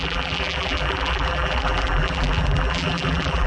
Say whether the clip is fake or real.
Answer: fake